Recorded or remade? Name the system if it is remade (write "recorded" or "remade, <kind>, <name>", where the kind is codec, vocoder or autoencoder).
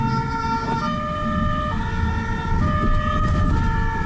recorded